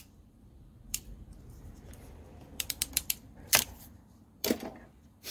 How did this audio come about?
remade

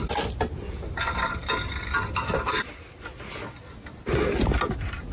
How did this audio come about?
recorded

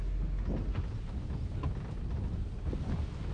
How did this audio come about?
recorded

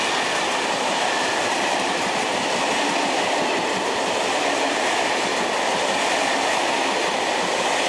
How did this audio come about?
remade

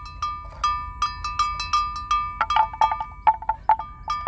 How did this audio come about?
recorded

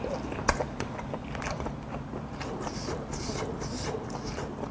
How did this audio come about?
remade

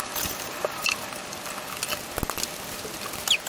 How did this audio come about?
recorded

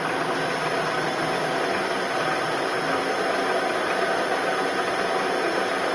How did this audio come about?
recorded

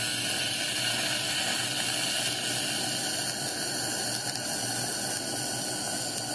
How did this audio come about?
recorded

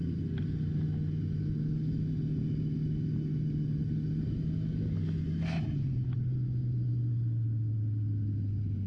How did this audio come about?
recorded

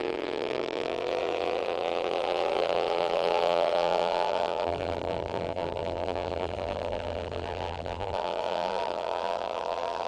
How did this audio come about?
remade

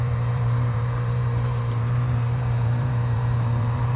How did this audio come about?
remade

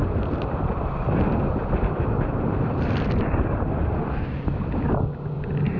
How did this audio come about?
remade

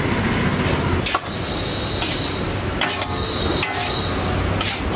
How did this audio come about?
recorded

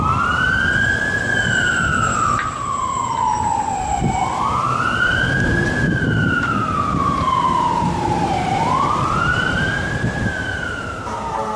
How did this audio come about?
remade